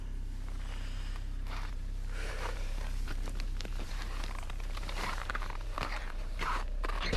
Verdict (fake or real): fake